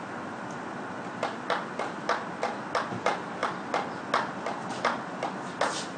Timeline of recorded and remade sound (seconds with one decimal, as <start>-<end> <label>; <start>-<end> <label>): 0.0-6.0 recorded